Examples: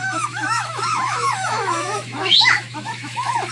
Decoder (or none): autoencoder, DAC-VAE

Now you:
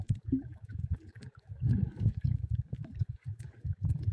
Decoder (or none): codec, DAC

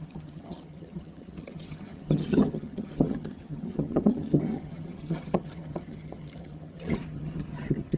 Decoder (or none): vocoder, HiFi-GAN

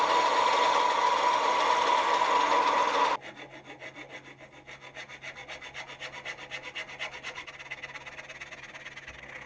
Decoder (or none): none